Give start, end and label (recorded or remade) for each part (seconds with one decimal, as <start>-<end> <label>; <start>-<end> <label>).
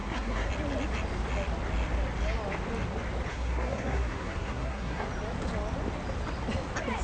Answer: 0.0-0.5 remade; 0.5-3.3 recorded; 3.3-5.1 remade; 5.1-7.0 recorded